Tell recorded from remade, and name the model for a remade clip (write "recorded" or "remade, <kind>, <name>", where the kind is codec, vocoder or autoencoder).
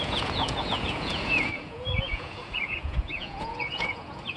remade, vocoder, Vocos